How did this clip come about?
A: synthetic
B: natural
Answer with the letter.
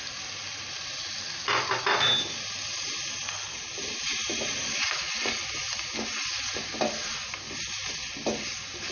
B